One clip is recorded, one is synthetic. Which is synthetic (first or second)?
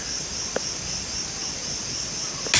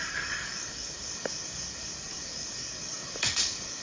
second